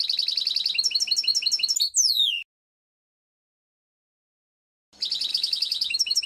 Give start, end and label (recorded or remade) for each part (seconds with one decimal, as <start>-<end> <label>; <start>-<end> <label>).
0.0-5.3 recorded; 5.3-6.3 remade